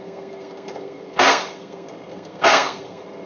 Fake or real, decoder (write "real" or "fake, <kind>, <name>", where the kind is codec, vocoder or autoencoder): fake, codec, SNAC